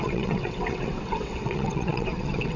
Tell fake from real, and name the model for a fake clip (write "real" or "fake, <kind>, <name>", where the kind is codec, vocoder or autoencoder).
fake, vocoder, WaveNeXt